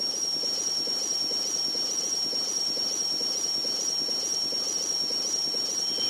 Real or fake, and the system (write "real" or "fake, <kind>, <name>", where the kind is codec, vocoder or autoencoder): real